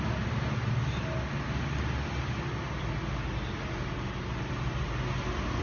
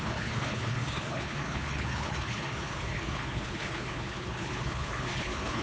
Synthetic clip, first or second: second